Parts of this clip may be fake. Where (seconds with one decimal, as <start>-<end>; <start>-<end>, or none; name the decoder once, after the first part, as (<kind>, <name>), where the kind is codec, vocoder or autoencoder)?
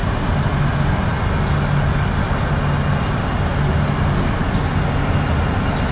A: none